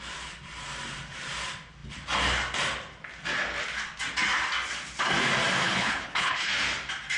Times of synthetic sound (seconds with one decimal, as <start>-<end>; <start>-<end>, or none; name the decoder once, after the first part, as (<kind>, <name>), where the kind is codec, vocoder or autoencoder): 5.6-6.5 (codec, HILCodec)